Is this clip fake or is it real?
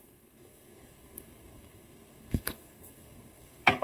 fake